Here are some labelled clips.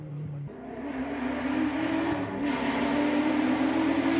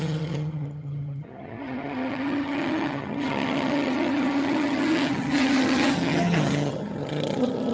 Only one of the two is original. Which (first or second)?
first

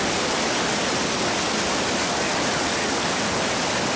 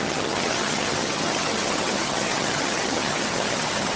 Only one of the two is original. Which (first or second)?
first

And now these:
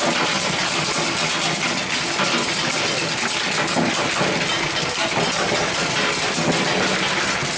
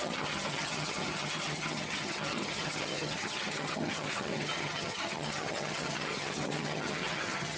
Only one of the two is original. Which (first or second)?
first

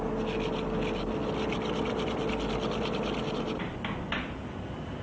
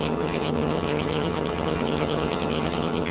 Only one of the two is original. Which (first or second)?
first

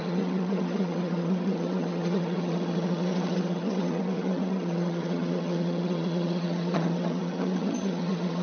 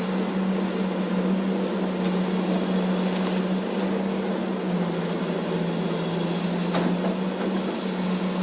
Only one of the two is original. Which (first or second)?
second